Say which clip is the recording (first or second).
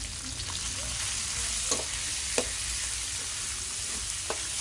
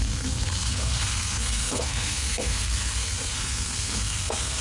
first